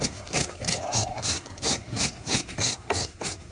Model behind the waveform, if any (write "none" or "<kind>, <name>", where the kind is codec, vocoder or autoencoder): codec, SNAC